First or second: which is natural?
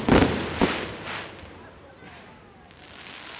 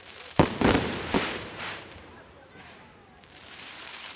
first